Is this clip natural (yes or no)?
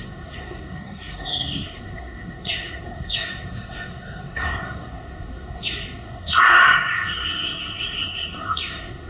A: no